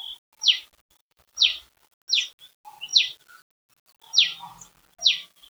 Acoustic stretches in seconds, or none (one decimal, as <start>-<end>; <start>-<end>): 0.0-1.0; 1.7-5.6